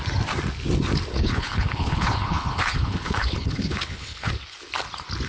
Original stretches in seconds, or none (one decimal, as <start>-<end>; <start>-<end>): 0.0-1.1; 4.3-5.3